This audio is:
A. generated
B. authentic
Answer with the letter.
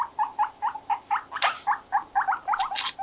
B